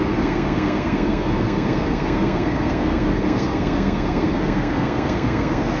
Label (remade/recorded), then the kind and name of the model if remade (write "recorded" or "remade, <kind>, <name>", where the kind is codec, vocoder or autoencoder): remade, codec, SNAC